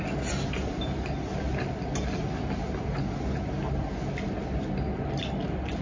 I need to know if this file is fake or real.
real